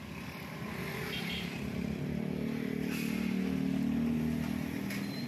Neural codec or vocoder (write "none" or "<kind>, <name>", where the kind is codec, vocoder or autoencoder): none